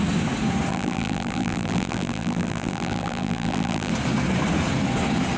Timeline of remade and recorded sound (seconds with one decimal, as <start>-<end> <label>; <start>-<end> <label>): 0.0-0.7 recorded; 0.7-3.9 remade; 3.9-5.4 recorded